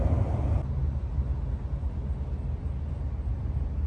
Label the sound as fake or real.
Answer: real